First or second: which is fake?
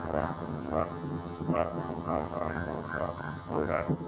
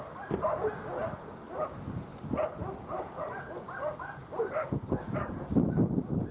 first